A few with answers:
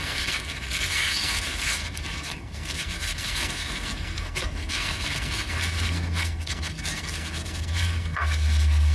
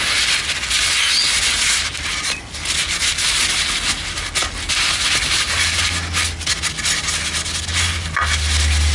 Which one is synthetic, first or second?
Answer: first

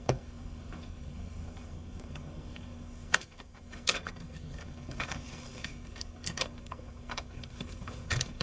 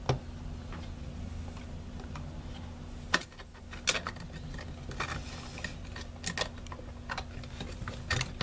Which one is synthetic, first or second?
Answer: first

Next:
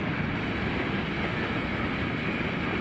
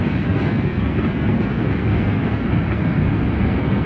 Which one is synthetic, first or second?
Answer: second